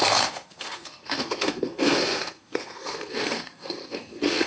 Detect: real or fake fake